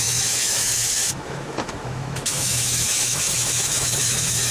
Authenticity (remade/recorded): remade